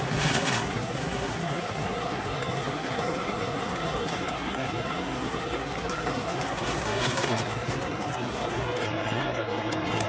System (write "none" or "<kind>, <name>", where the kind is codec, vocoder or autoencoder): codec, SNAC